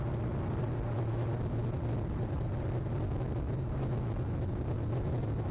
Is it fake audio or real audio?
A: real